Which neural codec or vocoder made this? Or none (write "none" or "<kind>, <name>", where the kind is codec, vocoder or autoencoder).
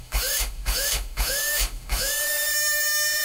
autoencoder, DAC-VAE